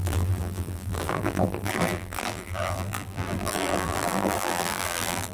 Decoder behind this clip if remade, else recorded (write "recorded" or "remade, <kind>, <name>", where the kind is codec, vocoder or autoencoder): remade, vocoder, BigVGAN v2